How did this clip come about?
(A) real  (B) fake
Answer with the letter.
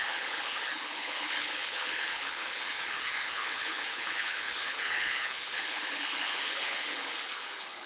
B